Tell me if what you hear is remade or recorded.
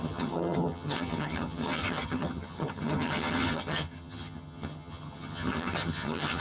remade